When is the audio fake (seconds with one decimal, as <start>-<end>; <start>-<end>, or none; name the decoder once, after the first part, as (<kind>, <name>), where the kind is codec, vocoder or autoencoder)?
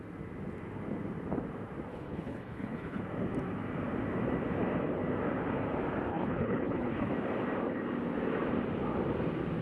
1.9-3.0 (codec, HILCodec); 6.1-7.1